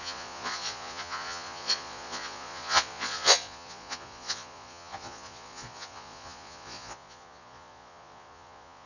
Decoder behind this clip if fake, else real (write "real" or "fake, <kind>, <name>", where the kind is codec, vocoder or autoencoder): fake, vocoder, Vocos